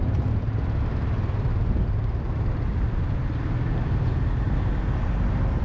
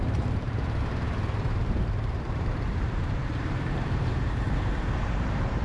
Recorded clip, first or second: first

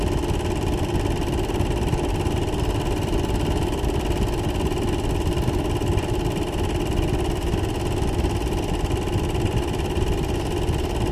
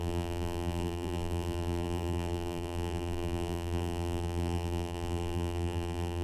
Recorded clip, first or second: first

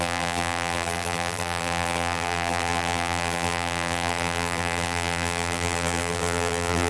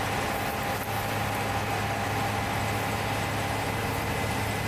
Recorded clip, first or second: second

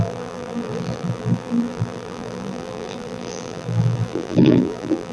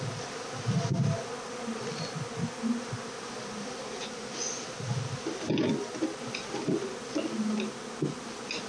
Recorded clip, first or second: second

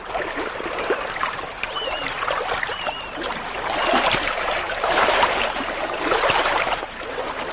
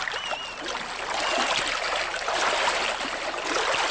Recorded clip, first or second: second